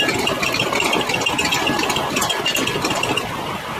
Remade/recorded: recorded